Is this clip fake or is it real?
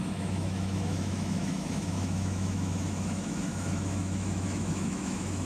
fake